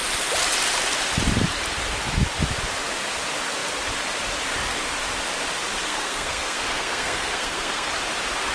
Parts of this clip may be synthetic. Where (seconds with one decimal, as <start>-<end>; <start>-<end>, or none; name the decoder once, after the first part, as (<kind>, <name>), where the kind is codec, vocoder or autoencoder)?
5.8-7.9 (codec, SNAC)